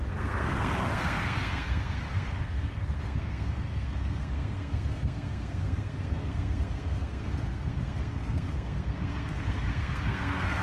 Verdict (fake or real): fake